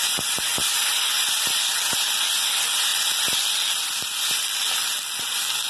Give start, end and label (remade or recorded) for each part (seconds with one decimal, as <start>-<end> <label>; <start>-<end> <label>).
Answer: 0.0-5.7 recorded